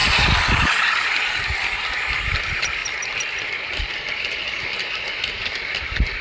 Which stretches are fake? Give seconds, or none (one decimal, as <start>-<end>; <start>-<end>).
none